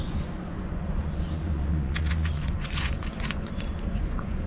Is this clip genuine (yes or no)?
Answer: no